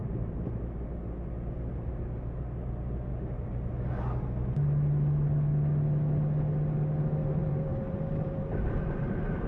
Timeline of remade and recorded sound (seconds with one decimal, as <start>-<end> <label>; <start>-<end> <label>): 0.0-0.6 remade; 0.6-3.1 recorded; 3.1-3.7 remade; 3.7-7.2 recorded; 7.2-9.5 remade

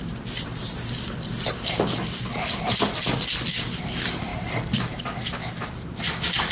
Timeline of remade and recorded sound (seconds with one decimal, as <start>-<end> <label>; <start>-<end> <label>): 0.0-6.5 recorded

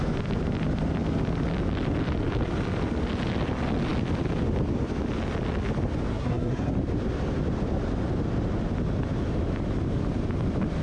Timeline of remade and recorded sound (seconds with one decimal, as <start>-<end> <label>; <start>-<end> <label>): 0.0-6.1 recorded; 6.1-6.7 remade; 6.7-10.8 recorded

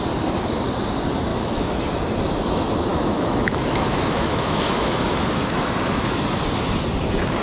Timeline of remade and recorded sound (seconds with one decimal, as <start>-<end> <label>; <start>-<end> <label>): 0.0-1.3 recorded; 1.3-1.8 remade; 1.8-2.9 recorded; 2.9-6.2 remade; 6.2-7.4 recorded

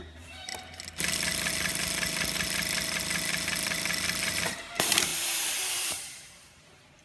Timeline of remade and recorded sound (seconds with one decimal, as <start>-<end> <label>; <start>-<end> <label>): 0.0-0.5 remade; 0.5-4.3 recorded; 4.3-5.1 remade; 5.1-5.7 recorded; 5.7-7.0 remade

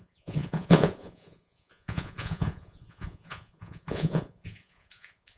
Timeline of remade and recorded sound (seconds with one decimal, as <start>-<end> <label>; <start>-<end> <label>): 0.0-5.4 remade

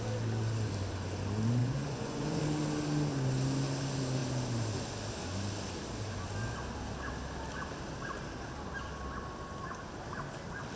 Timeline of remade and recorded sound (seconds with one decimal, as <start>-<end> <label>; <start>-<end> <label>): 0.0-1.6 recorded; 1.6-2.4 remade; 2.4-10.8 recorded

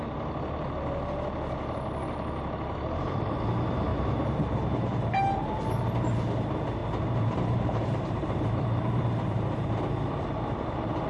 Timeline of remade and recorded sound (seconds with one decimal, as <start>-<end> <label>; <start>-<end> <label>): 0.0-3.9 recorded; 3.9-5.6 remade; 5.6-6.8 recorded; 6.8-10.4 remade; 10.4-11.1 recorded